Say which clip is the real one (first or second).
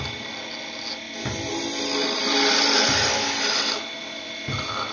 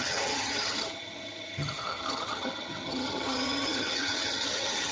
first